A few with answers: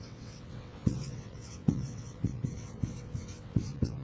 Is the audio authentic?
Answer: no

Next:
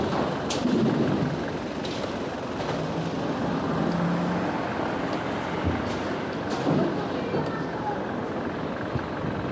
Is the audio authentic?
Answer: yes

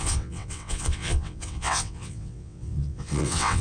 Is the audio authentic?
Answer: no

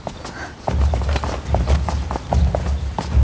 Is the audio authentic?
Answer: yes